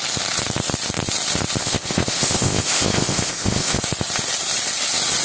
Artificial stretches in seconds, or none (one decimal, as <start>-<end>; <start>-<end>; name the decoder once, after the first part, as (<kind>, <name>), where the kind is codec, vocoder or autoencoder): 1.6-3.8 (codec, ZipCodec)